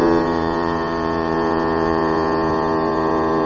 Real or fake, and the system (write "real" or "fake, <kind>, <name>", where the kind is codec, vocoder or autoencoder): fake, vocoder, Vocos